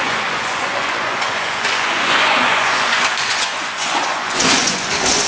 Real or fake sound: fake